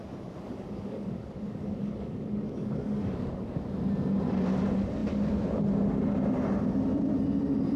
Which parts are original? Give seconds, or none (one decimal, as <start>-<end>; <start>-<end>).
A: 3.6-7.8